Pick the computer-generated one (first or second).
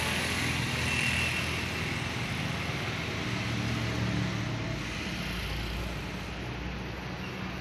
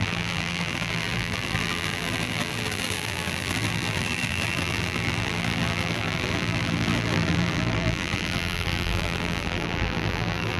second